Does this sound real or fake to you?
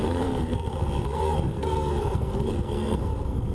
fake